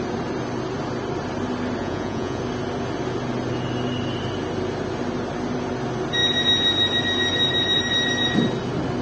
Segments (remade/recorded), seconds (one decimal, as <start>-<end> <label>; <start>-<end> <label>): 0.0-1.8 recorded; 1.8-2.4 remade; 2.4-9.0 recorded

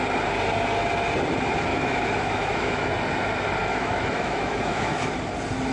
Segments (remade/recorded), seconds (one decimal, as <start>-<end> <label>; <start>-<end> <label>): 0.0-1.7 recorded; 1.7-2.9 remade; 2.9-3.6 recorded; 3.6-5.1 remade; 5.1-5.7 recorded

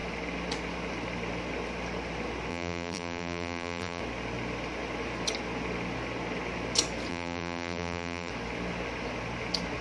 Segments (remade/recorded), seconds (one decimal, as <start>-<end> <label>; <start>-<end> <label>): 0.0-2.5 recorded; 2.5-4.0 remade; 4.0-7.1 recorded; 7.1-8.3 remade; 8.3-9.8 recorded

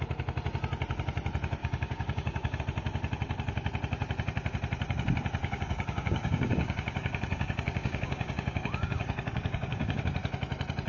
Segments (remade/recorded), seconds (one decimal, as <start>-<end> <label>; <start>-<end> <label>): 0.0-1.6 recorded; 1.6-2.6 remade; 2.6-5.4 recorded; 5.4-10.0 remade; 10.0-10.9 recorded

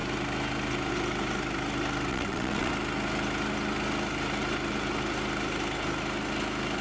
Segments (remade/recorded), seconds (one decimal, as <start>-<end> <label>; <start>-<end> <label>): 0.0-2.1 recorded; 2.1-2.7 remade; 2.7-6.8 recorded

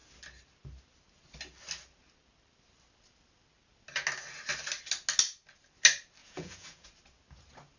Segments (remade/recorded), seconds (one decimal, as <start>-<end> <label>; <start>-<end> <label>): 0.0-6.2 recorded; 6.2-6.9 remade; 6.9-7.8 recorded